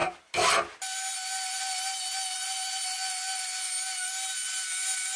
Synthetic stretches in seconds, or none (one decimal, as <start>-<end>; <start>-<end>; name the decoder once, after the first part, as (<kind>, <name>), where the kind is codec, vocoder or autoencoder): none